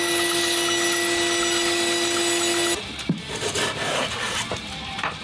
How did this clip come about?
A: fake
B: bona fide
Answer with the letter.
B